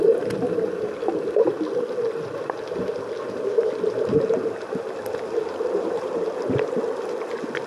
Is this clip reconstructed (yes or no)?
no